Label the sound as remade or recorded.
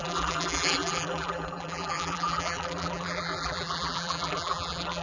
remade